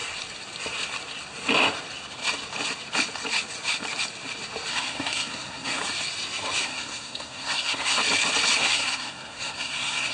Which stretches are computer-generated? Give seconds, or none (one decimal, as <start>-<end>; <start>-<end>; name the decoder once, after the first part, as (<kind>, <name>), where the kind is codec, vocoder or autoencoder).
4.7-5.8 (codec, SNAC); 6.6-8.0; 8.6-10.1